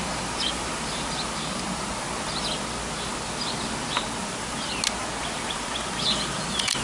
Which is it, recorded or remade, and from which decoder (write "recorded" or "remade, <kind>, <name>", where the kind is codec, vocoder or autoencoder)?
recorded